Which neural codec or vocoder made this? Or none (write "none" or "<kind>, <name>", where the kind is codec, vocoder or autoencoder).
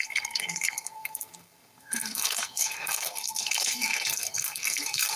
codec, SNAC